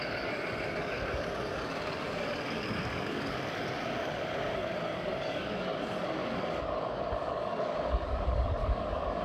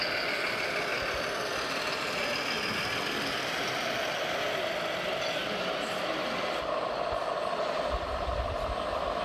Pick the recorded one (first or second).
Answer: second